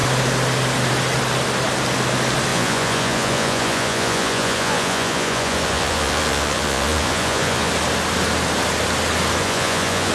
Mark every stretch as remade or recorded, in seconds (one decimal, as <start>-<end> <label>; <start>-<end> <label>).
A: 0.0-2.5 recorded; 2.5-7.7 remade; 7.7-9.4 recorded; 9.4-10.1 remade